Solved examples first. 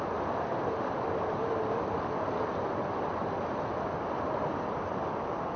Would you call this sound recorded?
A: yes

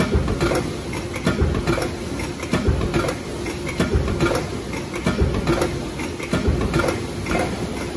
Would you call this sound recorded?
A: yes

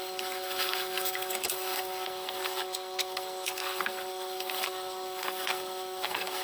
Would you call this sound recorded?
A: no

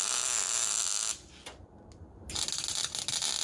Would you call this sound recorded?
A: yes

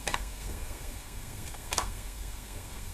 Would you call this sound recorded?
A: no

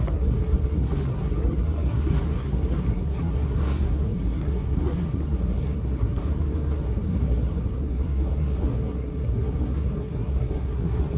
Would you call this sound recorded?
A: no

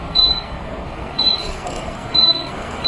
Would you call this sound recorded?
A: no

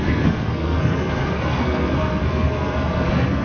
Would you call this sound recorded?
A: no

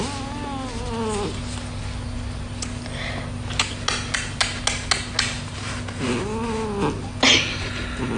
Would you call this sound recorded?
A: yes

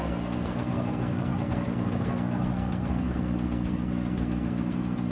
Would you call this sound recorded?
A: no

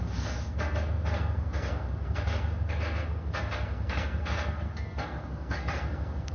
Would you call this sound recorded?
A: no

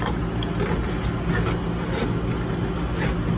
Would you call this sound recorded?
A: yes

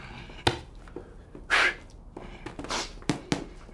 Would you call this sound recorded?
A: yes